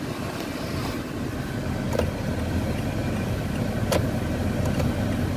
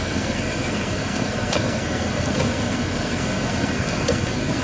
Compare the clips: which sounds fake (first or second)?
second